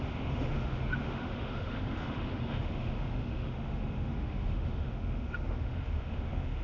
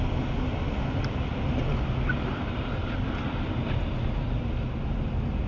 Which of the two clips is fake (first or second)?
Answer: first